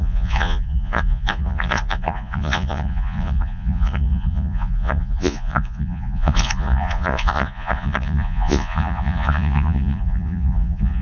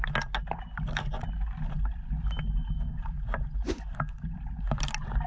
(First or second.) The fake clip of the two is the first